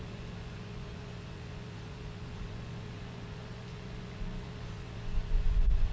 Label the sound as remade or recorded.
remade